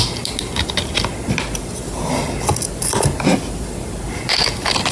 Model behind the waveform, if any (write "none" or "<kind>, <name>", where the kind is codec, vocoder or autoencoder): none